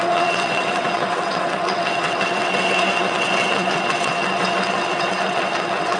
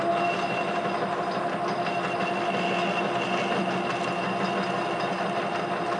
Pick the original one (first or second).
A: second